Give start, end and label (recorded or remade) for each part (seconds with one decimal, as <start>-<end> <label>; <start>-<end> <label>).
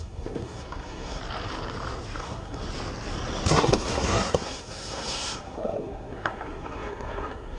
0.0-1.2 remade; 1.2-2.2 recorded; 2.2-2.6 remade; 2.6-3.5 recorded; 3.5-7.6 remade